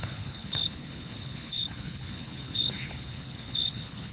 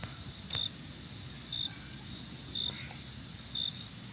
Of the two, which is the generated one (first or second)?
first